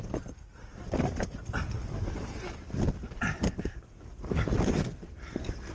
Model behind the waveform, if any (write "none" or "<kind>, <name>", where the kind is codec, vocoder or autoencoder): none